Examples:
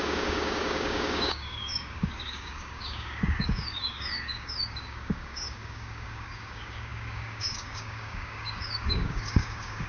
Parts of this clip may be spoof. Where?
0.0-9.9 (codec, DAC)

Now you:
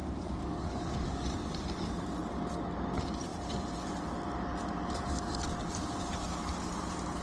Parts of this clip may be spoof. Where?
0.0-1.3 (codec, DAC)

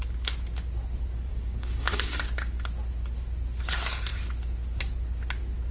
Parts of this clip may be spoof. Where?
1.3-2.2 (codec, DAC)

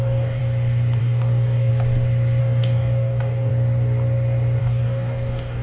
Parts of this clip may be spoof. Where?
0.0-0.4 (codec, DAC); 1.0-1.7; 2.4-3.5; 4.6-5.6

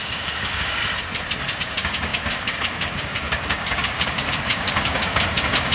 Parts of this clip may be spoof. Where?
0.0-0.8 (codec, DAC); 1.6-5.7

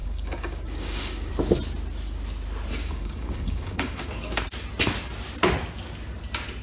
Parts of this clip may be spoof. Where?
0.0-1.3 (codec, DAC); 2.8-4.4